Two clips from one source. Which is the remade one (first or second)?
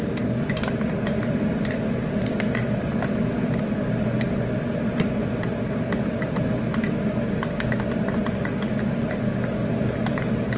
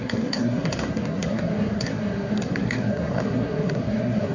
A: second